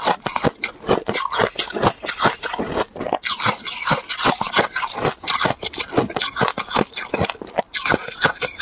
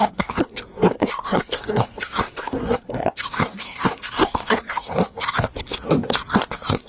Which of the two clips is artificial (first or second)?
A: second